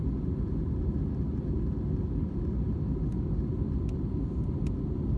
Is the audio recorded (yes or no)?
yes